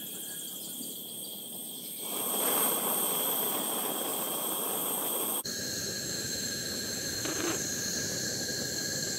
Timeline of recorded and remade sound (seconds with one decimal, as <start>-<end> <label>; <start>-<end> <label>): 0.0-1.6 recorded; 1.6-2.7 remade; 2.7-4.1 recorded; 4.1-7.6 remade; 7.6-9.2 recorded